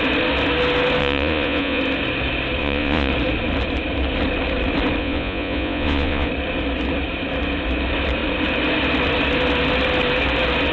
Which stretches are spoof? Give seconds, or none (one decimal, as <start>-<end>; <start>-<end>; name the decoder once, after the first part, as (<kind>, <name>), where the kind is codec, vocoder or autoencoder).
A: 1.0-1.8 (vocoder, Vocos); 2.6-3.1; 5.0-6.3